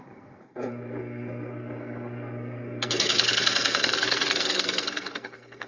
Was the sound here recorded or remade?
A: remade